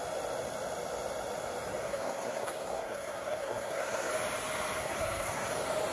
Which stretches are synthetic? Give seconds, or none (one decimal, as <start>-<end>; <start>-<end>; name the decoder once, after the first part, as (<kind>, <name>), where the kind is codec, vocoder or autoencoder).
1.8-4.1 (codec, SNAC); 4.8-5.5